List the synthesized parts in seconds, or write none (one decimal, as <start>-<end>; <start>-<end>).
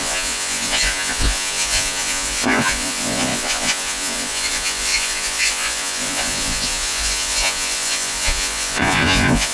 0.0-9.5